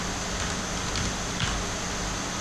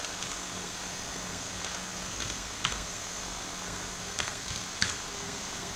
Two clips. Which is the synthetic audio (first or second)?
second